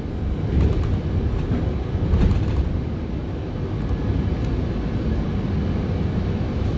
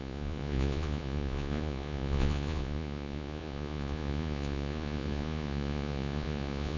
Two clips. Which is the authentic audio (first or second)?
first